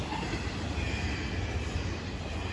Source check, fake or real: real